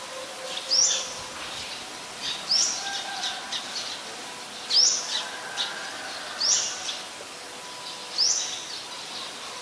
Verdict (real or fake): real